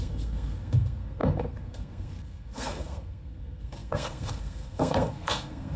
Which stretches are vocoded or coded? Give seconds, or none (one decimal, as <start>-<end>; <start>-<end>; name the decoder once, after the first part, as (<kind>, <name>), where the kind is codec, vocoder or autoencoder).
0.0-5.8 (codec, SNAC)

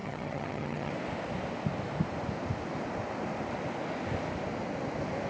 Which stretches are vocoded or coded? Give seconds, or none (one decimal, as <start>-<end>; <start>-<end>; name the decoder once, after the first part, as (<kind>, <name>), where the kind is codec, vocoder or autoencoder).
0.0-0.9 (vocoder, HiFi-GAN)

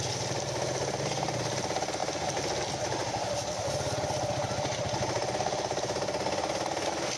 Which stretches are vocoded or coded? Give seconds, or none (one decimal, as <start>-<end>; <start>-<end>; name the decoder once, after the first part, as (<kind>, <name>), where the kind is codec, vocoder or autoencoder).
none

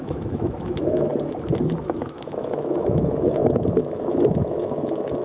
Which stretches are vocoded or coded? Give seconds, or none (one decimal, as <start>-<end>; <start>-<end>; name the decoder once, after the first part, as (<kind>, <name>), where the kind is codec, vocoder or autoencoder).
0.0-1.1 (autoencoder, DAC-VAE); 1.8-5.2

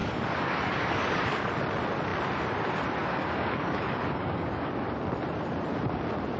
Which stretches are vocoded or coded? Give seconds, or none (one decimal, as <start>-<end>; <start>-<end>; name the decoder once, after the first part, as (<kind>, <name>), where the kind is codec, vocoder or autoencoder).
0.0-1.5 (codec, DAC); 3.0-4.7

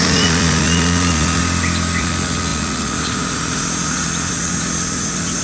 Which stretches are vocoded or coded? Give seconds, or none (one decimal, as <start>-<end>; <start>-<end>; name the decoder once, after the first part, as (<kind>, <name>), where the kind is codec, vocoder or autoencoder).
0.0-1.4 (vocoder, Vocos); 2.0-5.4